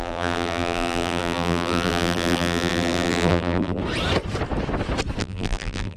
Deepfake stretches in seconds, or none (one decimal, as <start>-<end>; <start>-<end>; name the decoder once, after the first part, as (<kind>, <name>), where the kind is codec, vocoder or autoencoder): 0.0-3.8 (vocoder, BigVGAN v2); 5.2-6.0